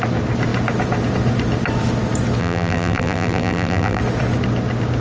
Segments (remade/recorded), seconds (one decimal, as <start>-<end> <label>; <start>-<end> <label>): 0.0-2.4 recorded; 2.4-4.0 remade; 4.0-5.0 recorded